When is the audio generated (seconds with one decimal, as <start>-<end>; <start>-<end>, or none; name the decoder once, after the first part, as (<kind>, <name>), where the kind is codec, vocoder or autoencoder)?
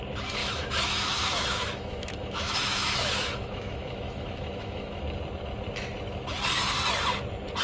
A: 0.4-5.0 (autoencoder, DAC-VAE)